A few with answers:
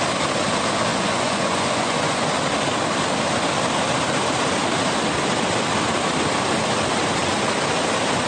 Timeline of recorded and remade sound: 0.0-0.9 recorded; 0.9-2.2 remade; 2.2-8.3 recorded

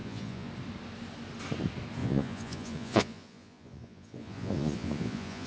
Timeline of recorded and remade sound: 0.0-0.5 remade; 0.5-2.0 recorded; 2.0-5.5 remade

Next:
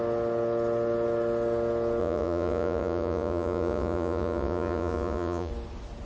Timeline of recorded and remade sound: 0.0-2.0 recorded; 2.0-5.5 remade; 5.5-6.1 recorded

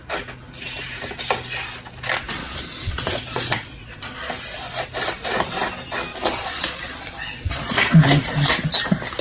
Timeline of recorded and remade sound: 0.0-2.4 recorded; 2.4-4.3 remade; 4.3-6.1 recorded; 6.1-8.0 remade; 8.0-9.2 recorded

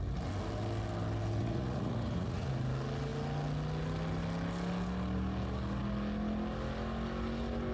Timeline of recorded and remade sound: 0.0-1.4 recorded; 1.4-2.6 remade; 2.6-7.7 recorded